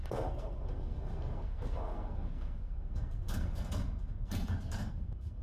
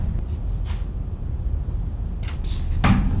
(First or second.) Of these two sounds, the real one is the second